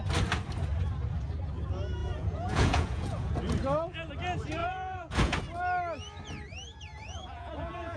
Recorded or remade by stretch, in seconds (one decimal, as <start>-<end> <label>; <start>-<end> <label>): 0.0-2.0 recorded; 2.0-3.3 remade; 3.3-4.6 recorded; 4.6-5.4 remade; 5.4-6.9 recorded; 6.9-8.0 remade